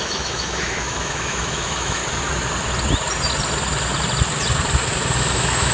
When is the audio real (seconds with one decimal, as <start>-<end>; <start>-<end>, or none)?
2.0-5.2